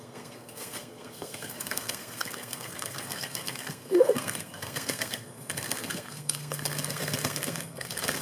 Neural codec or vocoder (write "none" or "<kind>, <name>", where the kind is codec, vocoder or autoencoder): codec, SNAC